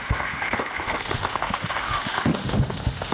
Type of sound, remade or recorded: remade